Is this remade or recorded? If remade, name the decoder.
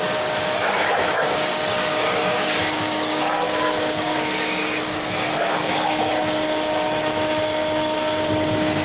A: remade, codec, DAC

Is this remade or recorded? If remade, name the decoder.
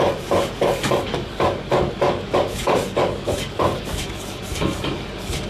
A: remade, codec, DAC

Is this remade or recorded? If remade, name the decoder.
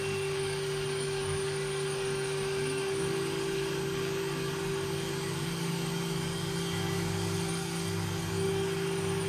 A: remade, codec, DAC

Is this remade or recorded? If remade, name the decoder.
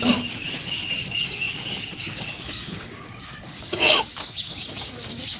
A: remade, codec, DAC